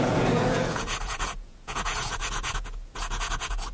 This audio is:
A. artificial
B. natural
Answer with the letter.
A